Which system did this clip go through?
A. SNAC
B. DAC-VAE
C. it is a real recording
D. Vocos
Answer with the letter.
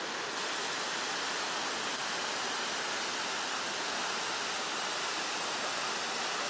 C